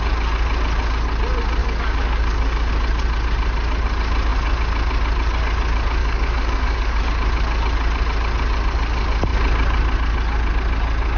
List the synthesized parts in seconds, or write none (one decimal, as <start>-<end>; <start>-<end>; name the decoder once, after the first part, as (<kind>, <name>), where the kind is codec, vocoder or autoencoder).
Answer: 1.6-2.7 (codec, DAC); 6.0-7.0